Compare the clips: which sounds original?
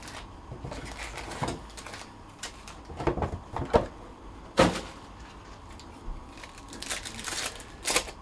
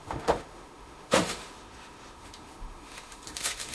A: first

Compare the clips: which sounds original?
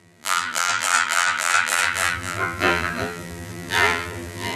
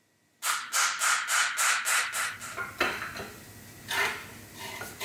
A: second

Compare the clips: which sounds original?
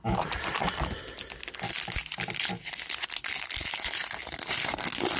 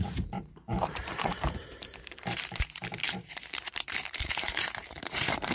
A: first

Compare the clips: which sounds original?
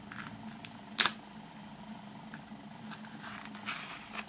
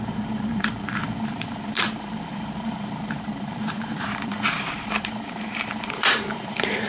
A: first